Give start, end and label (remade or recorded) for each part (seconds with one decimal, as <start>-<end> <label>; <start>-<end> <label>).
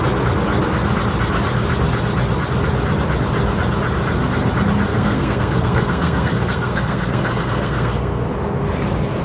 0.0-4.9 recorded; 4.9-8.3 remade; 8.3-9.2 recorded